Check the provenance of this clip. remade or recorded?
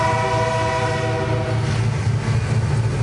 recorded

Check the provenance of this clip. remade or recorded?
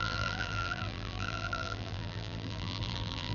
remade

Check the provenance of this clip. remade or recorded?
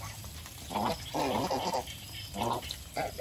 recorded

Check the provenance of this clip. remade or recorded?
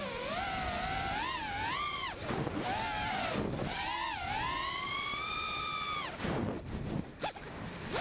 remade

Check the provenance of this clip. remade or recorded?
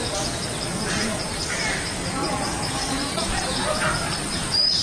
remade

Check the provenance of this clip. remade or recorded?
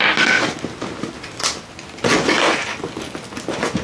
recorded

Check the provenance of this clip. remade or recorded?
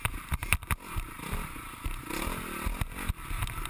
recorded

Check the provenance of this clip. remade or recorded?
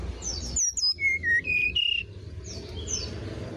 recorded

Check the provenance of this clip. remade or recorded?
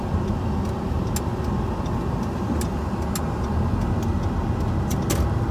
recorded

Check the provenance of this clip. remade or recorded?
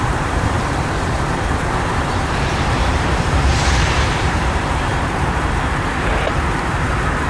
remade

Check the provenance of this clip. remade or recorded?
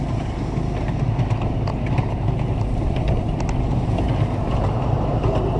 recorded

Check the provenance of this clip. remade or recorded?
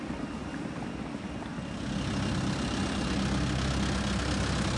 recorded